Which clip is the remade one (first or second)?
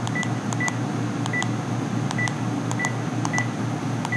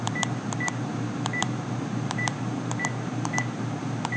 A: second